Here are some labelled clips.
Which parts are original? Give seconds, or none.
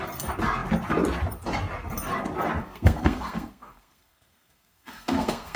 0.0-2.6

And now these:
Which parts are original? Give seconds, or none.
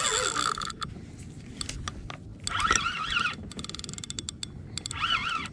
0.0-5.5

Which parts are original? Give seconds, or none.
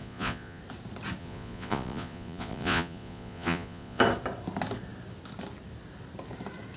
0.6-1.2; 4.0-6.8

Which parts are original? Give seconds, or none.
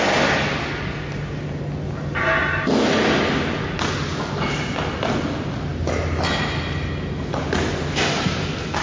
0.0-8.8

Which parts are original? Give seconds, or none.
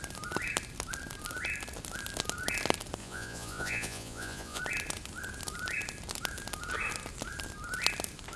0.0-3.0; 4.6-8.4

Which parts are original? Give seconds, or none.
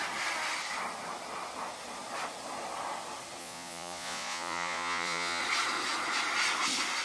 0.0-3.4; 5.4-7.0